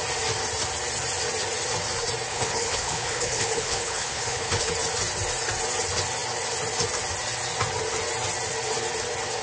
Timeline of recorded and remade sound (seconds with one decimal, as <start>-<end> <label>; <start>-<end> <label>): 0.0-2.3 recorded; 2.3-4.7 remade; 4.7-9.4 recorded